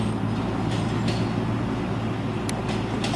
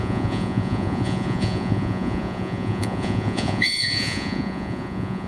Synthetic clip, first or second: second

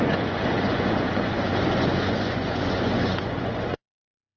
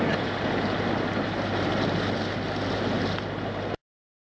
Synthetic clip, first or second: first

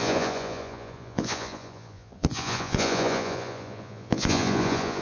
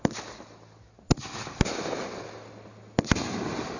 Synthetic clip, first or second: first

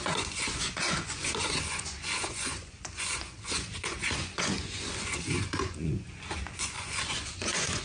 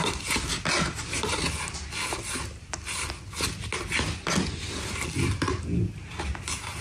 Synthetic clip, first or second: first